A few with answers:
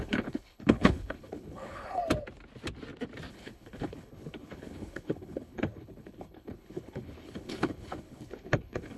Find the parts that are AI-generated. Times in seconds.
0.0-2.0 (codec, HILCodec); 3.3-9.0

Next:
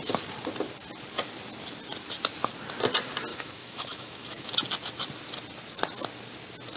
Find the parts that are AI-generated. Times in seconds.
3.3-4.5 (autoencoder, DAC-VAE)